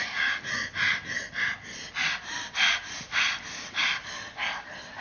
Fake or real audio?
real